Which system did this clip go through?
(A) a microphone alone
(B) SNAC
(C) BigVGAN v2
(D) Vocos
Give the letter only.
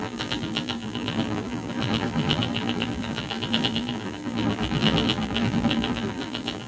C